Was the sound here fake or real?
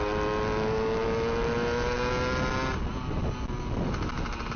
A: real